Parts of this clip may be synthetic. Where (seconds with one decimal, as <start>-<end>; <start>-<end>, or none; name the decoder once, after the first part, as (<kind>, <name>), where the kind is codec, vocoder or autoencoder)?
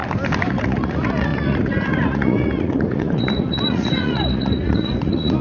0.5-5.4 (vocoder, Vocos)